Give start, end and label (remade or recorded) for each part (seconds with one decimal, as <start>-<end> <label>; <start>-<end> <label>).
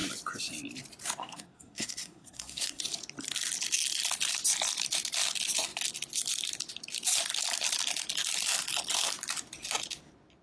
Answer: 0.0-1.2 recorded; 1.2-2.8 remade; 2.8-10.4 recorded